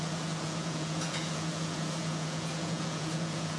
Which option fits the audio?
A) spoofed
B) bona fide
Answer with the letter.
A